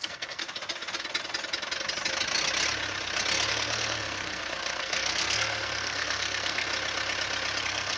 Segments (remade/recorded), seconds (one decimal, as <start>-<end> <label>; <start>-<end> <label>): 0.0-0.4 remade; 0.4-3.5 recorded; 3.5-6.7 remade; 6.7-7.6 recorded; 7.6-8.0 remade